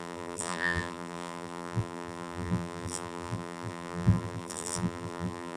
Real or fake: fake